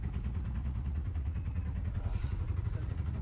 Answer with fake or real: fake